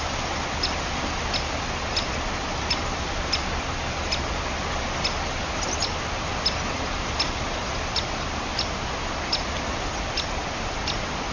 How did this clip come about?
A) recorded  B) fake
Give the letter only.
A